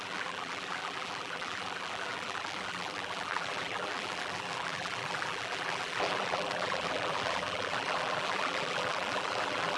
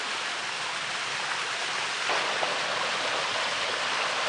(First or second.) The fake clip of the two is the first